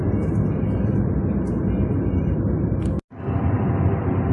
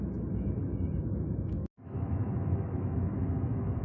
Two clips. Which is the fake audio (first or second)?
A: second